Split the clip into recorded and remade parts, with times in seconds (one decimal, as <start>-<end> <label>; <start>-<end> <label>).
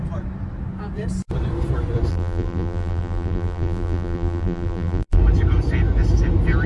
0.0-2.1 recorded; 2.1-5.2 remade; 5.2-6.7 recorded